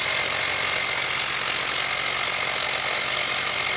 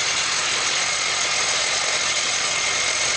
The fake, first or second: second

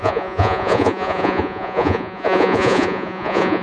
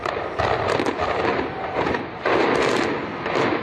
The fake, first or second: first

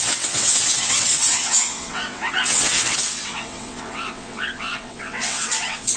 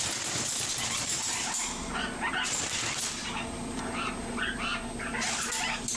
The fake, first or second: first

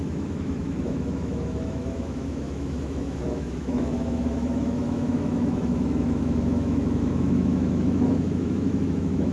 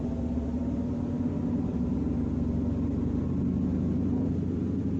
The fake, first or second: first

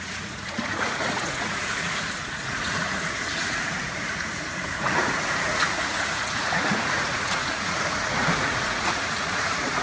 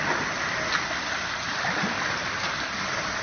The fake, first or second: first